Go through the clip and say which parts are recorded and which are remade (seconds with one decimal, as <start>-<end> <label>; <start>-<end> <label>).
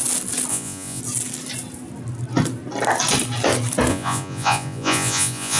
0.0-0.5 recorded; 0.5-1.0 remade; 1.0-3.9 recorded; 3.9-5.6 remade